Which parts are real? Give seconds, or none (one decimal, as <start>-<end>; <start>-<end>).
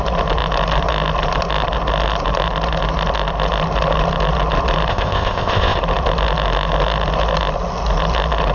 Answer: 0.0-4.9; 5.8-8.5